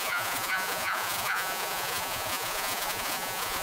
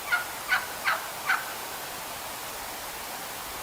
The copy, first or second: first